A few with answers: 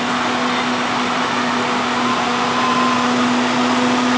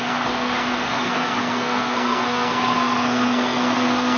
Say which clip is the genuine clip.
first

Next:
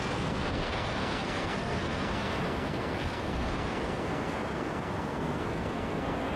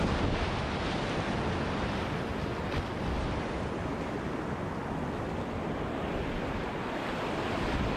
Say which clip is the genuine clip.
second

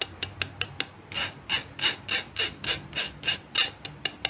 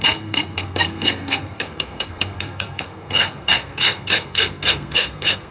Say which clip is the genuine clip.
first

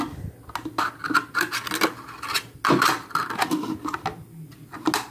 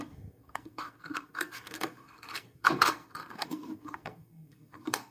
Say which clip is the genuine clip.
first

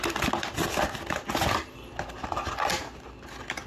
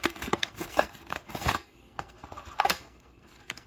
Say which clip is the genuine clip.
first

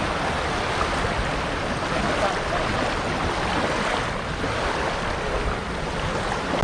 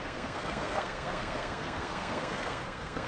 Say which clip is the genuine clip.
first